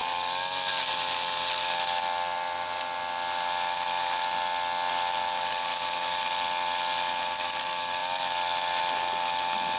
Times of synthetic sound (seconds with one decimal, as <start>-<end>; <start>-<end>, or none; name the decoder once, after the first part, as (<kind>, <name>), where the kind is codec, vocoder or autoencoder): none